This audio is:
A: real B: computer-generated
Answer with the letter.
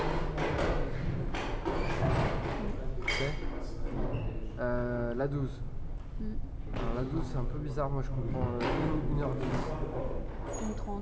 A